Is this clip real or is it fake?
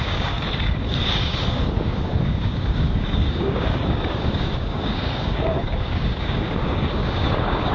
fake